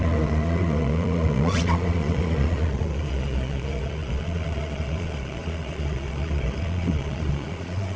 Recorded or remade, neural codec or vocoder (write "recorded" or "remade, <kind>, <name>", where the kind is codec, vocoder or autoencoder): remade, vocoder, Vocos